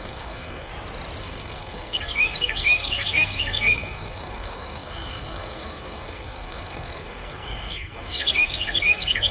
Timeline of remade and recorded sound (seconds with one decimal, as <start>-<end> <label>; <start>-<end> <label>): 0.0-0.7 remade; 0.7-1.2 recorded; 1.2-9.3 remade